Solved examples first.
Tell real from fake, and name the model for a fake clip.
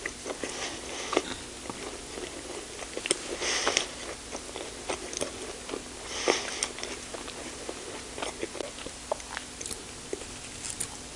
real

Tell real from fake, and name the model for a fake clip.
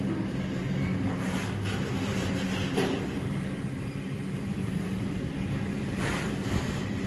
real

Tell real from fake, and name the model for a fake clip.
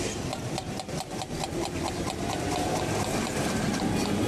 fake, vocoder, BigVGAN v2